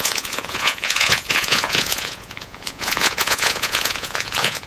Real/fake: fake